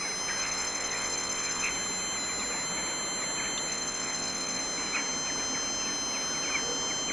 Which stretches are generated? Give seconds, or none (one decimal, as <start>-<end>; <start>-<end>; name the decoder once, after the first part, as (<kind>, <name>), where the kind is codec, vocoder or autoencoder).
0.4-1.7 (vocoder, WaveNeXt); 3.7-4.6